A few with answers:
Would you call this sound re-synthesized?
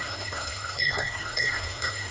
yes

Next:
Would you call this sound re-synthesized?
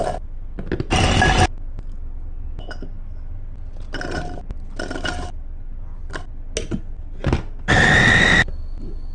no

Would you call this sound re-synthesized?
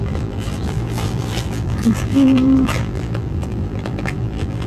yes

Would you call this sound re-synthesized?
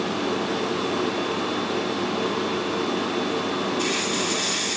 no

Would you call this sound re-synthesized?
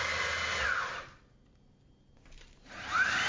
no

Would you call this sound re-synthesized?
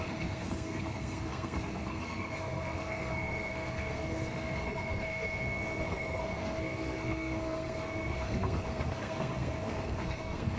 yes